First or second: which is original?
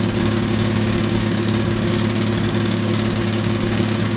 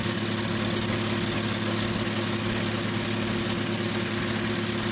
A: second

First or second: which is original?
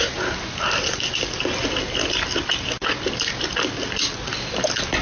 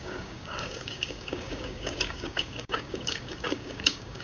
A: first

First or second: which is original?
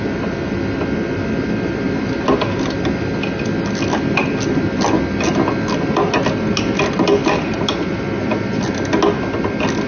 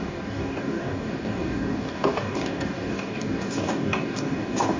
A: first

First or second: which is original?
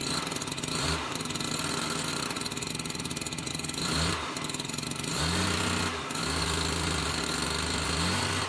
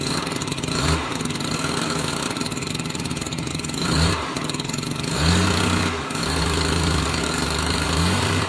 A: first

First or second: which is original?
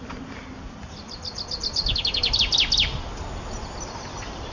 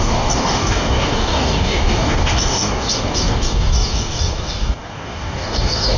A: first